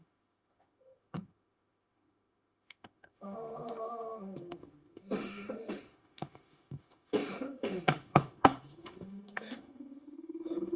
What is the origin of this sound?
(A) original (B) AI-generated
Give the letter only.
B